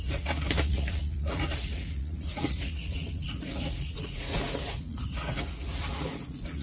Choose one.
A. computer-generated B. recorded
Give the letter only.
A